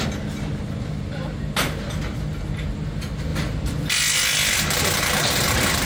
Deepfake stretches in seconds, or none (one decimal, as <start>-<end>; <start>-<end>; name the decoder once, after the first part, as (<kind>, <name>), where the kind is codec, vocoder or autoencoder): none